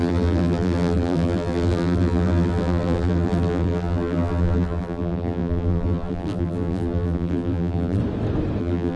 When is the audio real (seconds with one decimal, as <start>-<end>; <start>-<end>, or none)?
8.0-8.6